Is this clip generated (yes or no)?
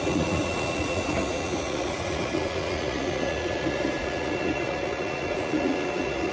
yes